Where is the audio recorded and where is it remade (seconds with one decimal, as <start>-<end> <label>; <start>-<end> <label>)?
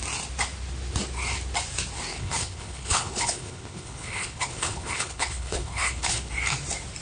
0.0-2.1 recorded; 2.1-6.3 remade; 6.3-7.0 recorded